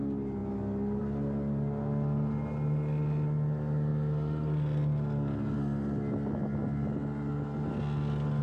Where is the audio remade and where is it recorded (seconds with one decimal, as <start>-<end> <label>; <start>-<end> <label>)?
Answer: 0.0-8.4 recorded